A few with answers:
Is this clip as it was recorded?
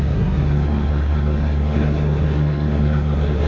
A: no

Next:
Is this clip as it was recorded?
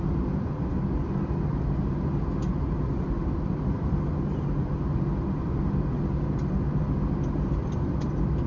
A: yes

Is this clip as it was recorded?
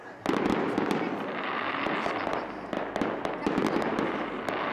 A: yes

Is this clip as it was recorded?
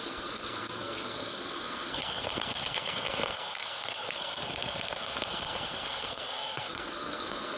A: no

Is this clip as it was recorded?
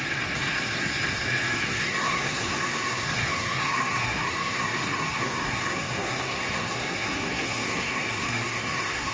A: no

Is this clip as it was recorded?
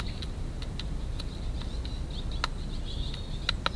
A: yes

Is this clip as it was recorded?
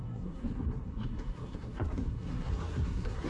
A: no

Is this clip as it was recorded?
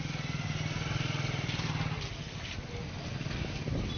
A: yes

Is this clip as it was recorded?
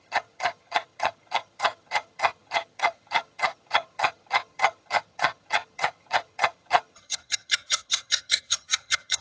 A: no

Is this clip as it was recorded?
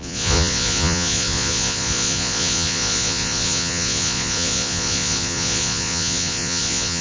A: no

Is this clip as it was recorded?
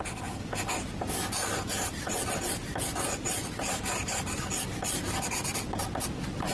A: yes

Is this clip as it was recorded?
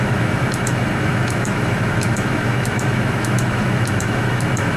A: no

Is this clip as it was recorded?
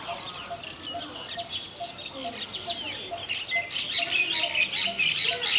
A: yes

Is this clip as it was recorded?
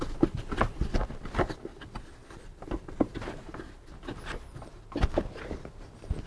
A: yes